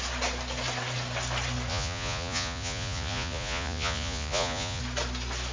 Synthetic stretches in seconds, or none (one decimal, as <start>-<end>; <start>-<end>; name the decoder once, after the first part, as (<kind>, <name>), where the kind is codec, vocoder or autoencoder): 1.7-4.8 (vocoder, Vocos)